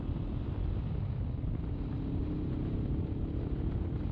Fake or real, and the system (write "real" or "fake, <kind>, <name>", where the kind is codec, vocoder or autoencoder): real